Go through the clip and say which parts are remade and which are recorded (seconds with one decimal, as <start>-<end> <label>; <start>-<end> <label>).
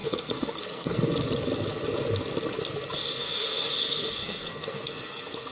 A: 0.0-1.0 remade; 1.0-3.2 recorded; 3.2-3.7 remade; 3.7-4.2 recorded; 4.2-5.5 remade